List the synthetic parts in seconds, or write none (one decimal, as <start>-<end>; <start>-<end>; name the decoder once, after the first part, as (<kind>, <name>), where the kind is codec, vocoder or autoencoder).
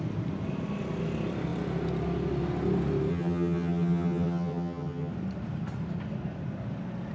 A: 3.1-5.1 (vocoder, HiFi-GAN)